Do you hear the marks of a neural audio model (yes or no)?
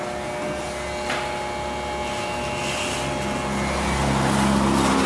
no